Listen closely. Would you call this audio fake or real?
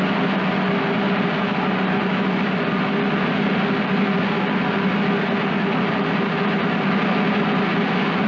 real